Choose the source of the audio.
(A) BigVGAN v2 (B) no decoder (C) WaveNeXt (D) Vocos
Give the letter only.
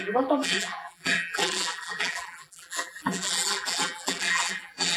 A